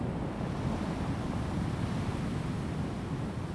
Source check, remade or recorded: recorded